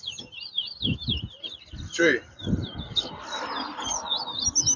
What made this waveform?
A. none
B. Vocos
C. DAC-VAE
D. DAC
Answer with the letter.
A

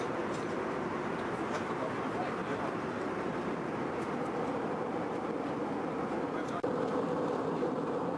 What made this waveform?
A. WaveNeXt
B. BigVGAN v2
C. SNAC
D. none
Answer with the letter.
B